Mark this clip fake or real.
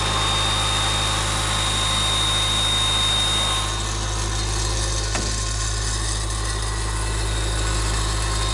real